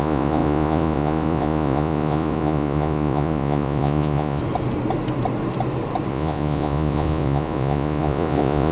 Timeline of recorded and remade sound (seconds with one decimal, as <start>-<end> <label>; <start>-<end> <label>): 0.0-4.4 remade; 4.4-6.1 recorded; 6.1-8.7 remade

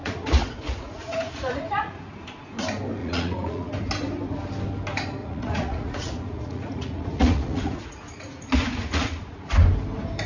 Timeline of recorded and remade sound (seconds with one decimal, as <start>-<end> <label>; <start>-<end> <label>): 0.0-2.3 remade; 2.3-3.0 recorded; 3.0-3.7 remade; 3.7-5.2 recorded; 5.2-9.5 remade; 9.5-10.3 recorded

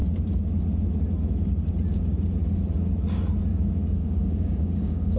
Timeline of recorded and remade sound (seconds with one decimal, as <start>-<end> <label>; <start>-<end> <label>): 0.0-3.5 recorded; 3.5-5.2 remade

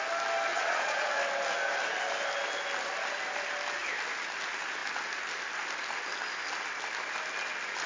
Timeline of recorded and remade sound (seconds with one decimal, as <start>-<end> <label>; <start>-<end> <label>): 0.0-0.5 recorded; 0.5-1.1 remade; 1.1-7.9 recorded

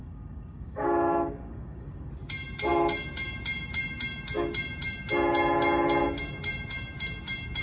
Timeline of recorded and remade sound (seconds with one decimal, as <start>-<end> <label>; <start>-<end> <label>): 0.0-2.1 remade; 2.1-7.6 recorded

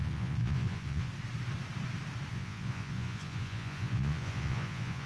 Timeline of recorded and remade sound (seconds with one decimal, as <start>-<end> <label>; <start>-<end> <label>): 0.0-1.1 remade; 1.1-2.3 recorded; 2.3-5.1 remade